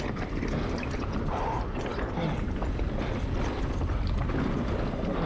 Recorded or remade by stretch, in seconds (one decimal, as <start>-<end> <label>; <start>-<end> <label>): 0.0-5.3 recorded